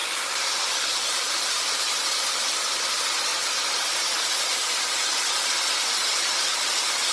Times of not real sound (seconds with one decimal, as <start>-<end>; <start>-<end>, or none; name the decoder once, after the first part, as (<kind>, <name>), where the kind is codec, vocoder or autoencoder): 0.0-1.8 (vocoder, BigVGAN v2); 3.3-5.5